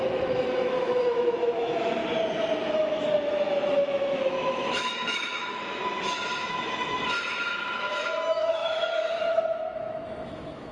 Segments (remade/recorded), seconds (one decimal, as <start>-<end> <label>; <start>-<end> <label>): 0.0-2.0 remade; 2.0-2.7 recorded; 2.7-10.7 remade